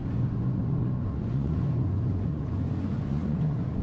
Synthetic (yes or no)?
yes